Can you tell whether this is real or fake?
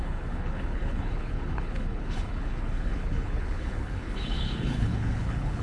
fake